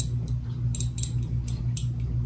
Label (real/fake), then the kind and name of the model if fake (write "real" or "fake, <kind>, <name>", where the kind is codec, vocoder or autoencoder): real